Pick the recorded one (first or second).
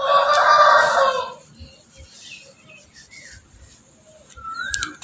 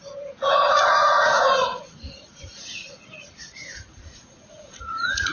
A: first